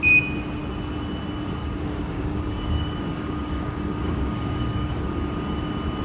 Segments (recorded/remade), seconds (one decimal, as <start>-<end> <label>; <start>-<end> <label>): 0.0-1.6 recorded; 1.6-5.2 remade; 5.2-6.0 recorded